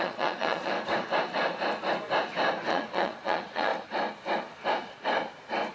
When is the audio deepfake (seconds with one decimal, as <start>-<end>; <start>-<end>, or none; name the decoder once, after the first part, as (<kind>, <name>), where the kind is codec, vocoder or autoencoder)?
0.0-0.7 (vocoder, Vocos); 2.7-3.7